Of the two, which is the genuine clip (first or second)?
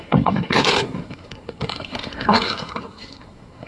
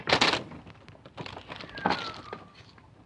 second